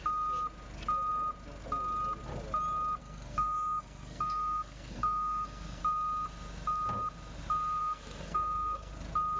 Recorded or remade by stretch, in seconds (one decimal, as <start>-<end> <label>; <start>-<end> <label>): 0.0-3.0 recorded; 3.0-5.8 remade; 5.8-7.8 recorded; 7.8-8.9 remade; 8.9-9.4 recorded